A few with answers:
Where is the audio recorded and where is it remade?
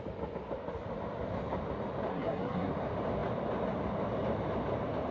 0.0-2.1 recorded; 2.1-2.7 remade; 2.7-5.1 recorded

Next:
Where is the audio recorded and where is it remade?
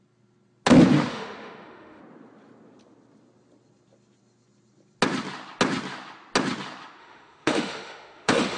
0.0-1.1 recorded; 1.1-2.0 remade; 2.0-7.0 recorded; 7.0-8.6 remade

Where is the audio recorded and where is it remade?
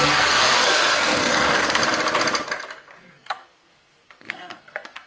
0.0-1.8 remade; 1.8-3.0 recorded; 3.0-5.1 remade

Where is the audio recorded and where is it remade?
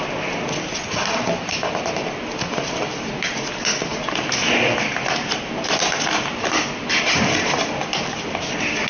0.0-8.9 recorded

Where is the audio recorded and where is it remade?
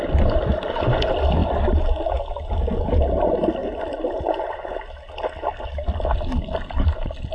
0.0-7.3 recorded